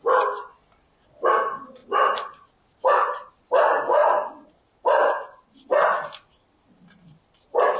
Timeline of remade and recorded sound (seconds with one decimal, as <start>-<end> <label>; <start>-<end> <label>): 0.0-1.8 recorded; 1.8-3.3 remade; 3.3-7.8 recorded